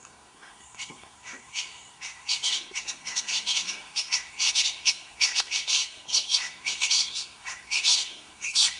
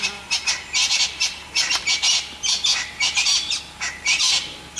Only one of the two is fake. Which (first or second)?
first